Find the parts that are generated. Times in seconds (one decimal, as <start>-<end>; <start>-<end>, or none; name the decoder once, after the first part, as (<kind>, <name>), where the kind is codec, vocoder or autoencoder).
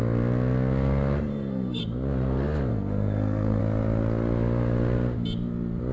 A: 1.3-1.8 (codec, SNAC); 2.7-3.6